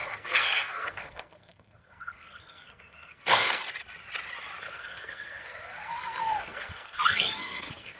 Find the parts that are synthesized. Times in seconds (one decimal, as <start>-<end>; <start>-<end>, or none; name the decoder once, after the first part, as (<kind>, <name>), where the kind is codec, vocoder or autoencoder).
0.0-3.6 (codec, SNAC); 4.6-8.0